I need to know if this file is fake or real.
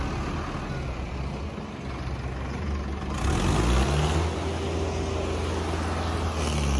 real